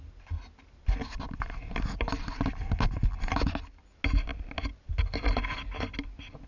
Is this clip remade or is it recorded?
recorded